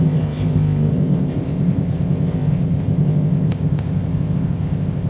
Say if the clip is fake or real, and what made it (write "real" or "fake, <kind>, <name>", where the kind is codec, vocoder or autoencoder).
fake, codec, ZipCodec